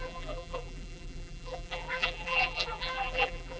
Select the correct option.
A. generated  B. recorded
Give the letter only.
A